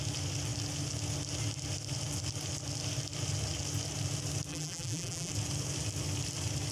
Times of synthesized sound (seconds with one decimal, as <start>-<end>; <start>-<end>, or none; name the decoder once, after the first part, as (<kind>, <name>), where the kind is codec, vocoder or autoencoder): 4.5-5.3 (vocoder, BigVGAN v2)